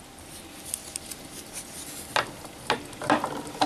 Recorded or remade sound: recorded